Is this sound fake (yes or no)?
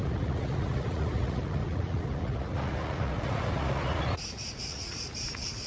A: yes